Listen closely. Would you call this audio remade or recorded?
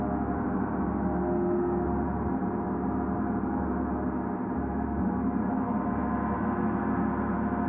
recorded